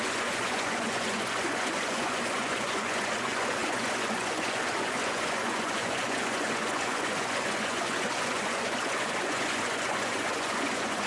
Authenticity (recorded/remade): remade